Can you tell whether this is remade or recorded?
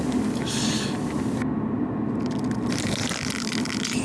recorded